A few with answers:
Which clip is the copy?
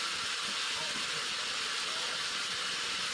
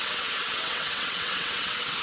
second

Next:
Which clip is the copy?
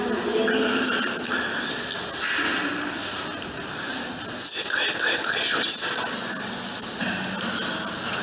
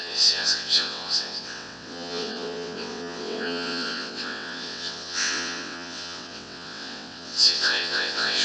second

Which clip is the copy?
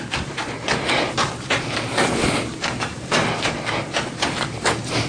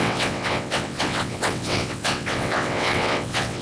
second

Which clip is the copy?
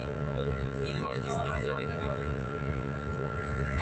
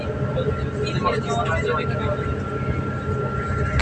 first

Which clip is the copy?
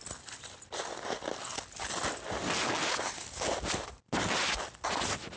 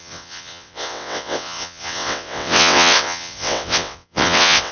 second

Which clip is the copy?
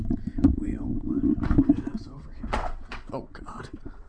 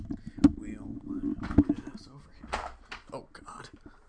first